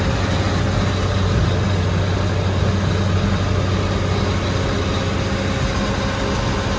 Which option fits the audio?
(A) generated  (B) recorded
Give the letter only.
B